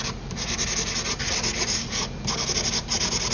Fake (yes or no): no